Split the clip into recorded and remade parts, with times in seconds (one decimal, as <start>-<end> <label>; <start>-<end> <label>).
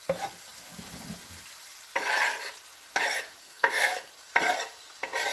0.0-3.4 recorded; 3.4-4.1 remade; 4.1-5.3 recorded